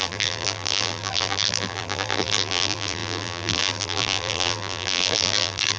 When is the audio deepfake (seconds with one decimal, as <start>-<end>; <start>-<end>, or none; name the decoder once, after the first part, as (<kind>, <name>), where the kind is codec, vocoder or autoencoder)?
0.0-5.8 (vocoder, BigVGAN v2)